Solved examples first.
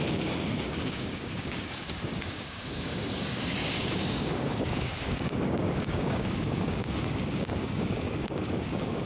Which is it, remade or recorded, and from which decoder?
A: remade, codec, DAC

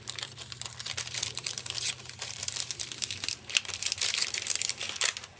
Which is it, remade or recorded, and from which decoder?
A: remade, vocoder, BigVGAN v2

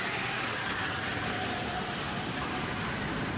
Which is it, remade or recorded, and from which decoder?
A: recorded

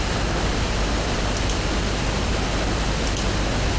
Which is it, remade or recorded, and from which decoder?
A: recorded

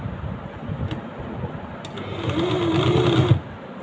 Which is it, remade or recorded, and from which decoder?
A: recorded